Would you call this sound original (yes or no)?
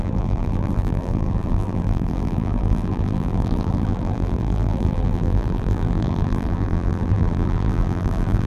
no